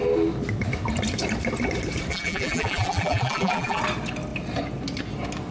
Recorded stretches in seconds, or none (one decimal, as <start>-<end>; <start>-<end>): 0.0-2.1; 3.8-5.5